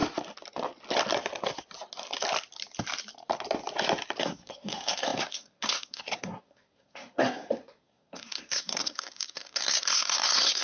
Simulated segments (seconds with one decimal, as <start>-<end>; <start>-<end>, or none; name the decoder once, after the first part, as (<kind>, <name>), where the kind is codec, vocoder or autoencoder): 4.2-10.6 (codec, SNAC)